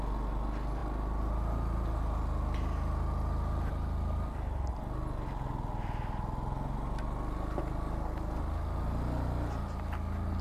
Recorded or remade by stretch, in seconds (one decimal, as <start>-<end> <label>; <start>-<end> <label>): 0.0-10.4 recorded